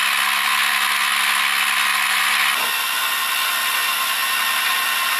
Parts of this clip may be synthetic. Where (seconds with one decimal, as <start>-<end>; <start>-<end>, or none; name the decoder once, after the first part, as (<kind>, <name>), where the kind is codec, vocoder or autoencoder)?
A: 1.9-2.5 (vocoder, BigVGAN v2)